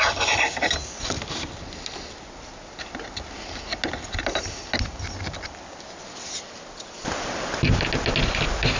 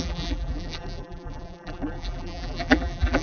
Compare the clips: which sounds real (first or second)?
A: first